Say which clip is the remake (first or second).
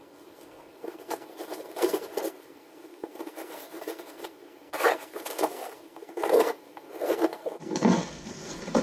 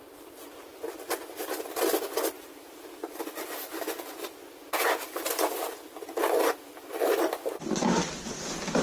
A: first